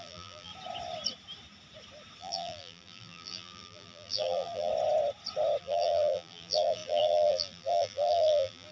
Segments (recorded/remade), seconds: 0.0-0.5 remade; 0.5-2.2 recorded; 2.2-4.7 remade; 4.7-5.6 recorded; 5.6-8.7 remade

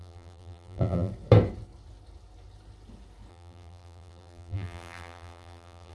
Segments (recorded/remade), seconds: 0.0-1.1 remade; 1.1-3.3 recorded; 3.3-5.9 remade

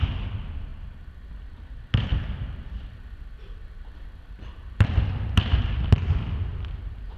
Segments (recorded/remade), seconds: 0.0-0.7 recorded; 0.7-1.3 remade; 1.3-2.1 recorded; 2.1-5.4 remade; 5.4-7.2 recorded

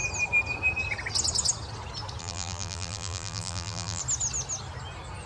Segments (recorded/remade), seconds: 0.0-2.2 recorded; 2.2-4.0 remade; 4.0-5.3 recorded

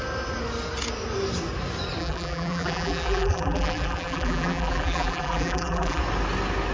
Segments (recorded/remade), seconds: 0.0-2.0 recorded; 2.0-6.0 remade; 6.0-6.7 recorded

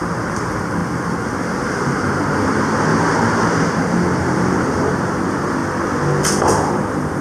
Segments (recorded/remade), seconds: 0.0-0.8 remade; 0.8-1.7 recorded; 1.7-2.9 remade; 2.9-3.7 recorded; 3.7-5.6 remade; 5.6-6.7 recorded; 6.7-7.2 remade

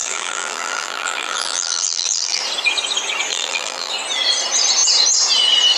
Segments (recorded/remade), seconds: 0.0-2.4 remade; 2.4-3.3 recorded; 3.3-3.9 remade; 3.9-5.8 recorded